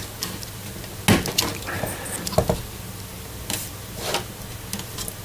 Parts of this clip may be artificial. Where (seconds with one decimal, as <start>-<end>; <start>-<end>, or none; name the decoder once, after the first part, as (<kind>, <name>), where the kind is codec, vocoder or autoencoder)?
none